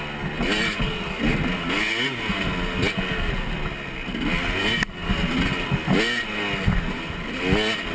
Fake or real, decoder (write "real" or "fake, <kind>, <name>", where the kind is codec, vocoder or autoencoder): real